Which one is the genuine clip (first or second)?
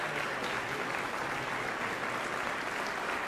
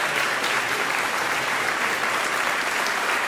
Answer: first